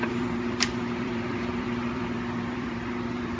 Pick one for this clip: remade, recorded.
remade